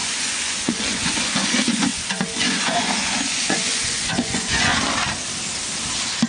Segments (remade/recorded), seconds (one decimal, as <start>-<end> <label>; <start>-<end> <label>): 0.0-4.7 remade; 4.7-6.3 recorded